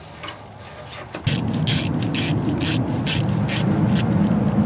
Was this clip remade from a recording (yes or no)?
no